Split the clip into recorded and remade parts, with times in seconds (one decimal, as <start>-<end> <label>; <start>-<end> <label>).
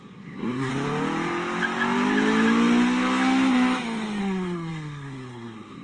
0.0-0.7 remade; 0.7-4.2 recorded; 4.2-5.8 remade